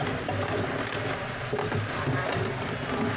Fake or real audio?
real